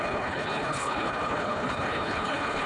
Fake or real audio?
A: fake